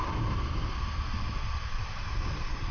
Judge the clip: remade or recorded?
recorded